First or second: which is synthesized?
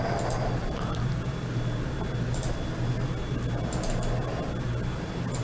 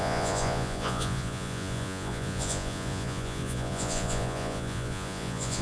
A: second